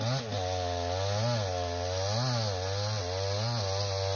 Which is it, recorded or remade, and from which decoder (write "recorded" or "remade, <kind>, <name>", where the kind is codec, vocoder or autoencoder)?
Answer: recorded